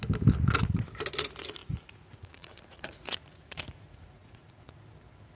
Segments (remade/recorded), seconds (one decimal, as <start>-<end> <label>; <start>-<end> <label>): 0.0-1.6 recorded; 1.6-4.8 remade; 4.8-5.4 recorded